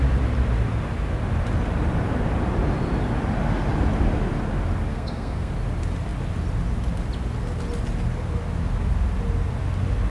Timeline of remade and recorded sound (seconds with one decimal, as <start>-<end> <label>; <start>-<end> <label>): 0.0-4.9 recorded; 4.9-5.5 remade; 5.5-10.1 recorded